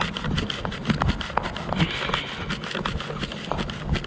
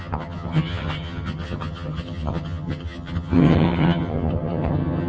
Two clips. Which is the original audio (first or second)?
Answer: first